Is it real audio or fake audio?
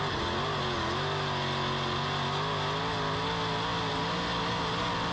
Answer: real